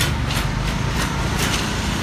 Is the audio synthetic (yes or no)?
yes